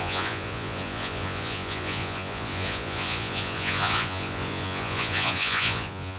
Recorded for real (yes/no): no